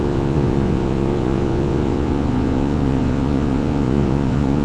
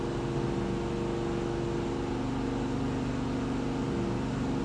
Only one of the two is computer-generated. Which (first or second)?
first